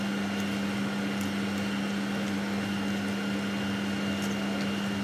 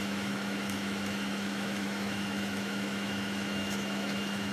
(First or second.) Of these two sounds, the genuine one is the first